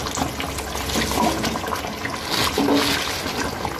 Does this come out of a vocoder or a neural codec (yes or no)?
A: no